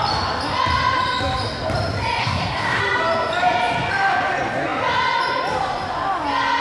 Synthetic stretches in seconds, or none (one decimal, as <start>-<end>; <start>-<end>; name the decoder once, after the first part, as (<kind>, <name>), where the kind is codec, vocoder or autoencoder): 2.2-2.8 (codec, SNAC)